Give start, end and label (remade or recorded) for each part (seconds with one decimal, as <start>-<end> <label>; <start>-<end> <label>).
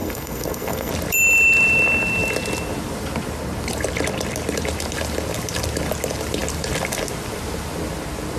0.0-0.9 remade; 0.9-8.4 recorded